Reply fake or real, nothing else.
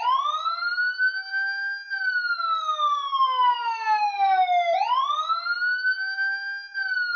real